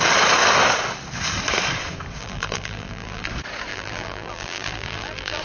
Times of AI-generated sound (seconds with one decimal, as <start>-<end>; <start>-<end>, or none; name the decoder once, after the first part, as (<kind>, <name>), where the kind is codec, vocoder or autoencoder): 2.2-3.3 (vocoder, BigVGAN v2); 3.7-5.4